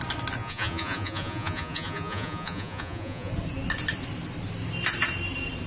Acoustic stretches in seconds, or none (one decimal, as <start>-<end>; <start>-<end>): 0.0-0.4; 3.3-5.7